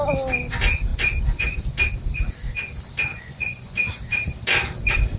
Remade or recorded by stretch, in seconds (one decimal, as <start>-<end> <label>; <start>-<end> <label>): 0.0-3.1 recorded; 3.1-4.0 remade; 4.0-5.2 recorded